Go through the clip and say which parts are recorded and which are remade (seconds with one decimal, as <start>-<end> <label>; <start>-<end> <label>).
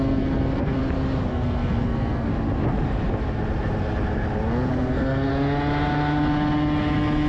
0.0-0.8 remade; 0.8-1.3 recorded; 1.3-2.3 remade; 2.3-4.7 recorded; 4.7-5.3 remade; 5.3-7.3 recorded